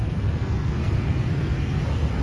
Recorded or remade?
remade